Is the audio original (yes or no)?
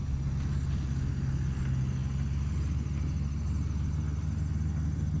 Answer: yes